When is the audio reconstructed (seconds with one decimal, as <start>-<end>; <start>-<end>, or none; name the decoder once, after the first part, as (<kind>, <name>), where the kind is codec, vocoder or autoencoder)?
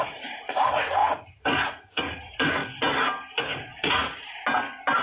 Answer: 0.0-2.6 (vocoder, Vocos); 3.4-4.0